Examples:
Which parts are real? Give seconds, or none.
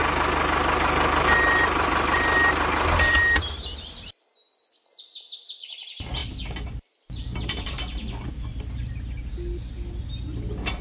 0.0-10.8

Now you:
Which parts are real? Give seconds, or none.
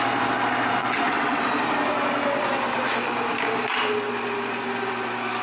0.0-0.8; 1.4-5.4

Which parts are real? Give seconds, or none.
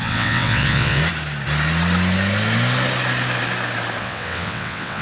1.0-4.0